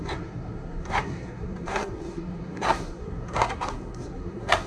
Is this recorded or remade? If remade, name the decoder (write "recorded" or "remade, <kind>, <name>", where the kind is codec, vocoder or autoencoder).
remade, codec, SNAC